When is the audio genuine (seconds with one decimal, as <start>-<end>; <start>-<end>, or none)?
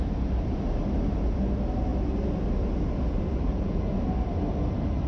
0.0-3.5; 4.0-5.1